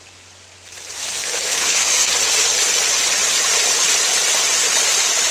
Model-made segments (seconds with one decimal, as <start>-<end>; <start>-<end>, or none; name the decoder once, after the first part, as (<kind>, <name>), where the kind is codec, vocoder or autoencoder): 1.0-2.1 (codec, SNAC)